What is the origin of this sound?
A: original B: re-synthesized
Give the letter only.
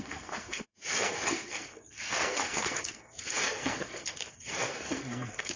B